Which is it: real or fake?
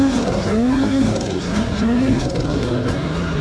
fake